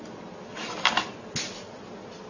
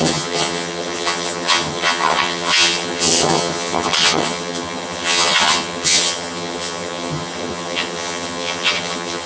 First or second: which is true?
first